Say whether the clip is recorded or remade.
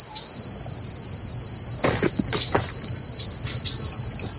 recorded